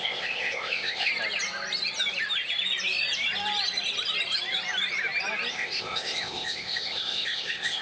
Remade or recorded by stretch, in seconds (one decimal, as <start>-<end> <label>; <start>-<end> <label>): 0.0-1.1 remade; 1.1-5.5 recorded; 5.5-7.8 remade

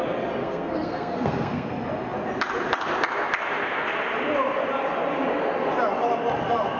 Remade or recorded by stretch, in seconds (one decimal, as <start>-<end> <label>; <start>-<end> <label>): 0.0-0.4 recorded; 0.4-1.7 remade; 1.7-6.8 recorded

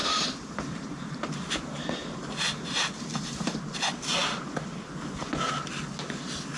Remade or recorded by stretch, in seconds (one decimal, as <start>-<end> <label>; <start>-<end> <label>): 0.0-3.3 remade; 3.3-6.6 recorded

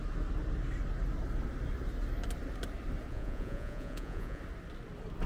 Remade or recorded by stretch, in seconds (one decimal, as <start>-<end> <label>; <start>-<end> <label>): 0.0-3.1 recorded; 3.1-4.4 remade; 4.4-5.3 recorded

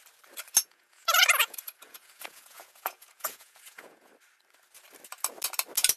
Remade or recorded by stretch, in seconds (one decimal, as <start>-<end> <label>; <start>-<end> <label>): 0.0-0.6 recorded; 0.6-4.1 remade; 4.1-6.0 recorded

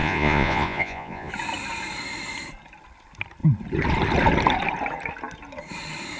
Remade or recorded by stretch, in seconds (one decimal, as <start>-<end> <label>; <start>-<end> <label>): 0.0-1.3 remade; 1.3-6.2 recorded

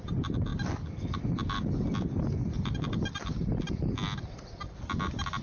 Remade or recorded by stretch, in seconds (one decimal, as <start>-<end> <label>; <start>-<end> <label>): 0.0-5.4 recorded

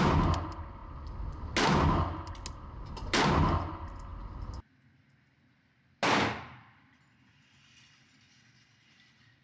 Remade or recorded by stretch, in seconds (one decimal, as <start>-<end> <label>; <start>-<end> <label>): 0.0-9.4 recorded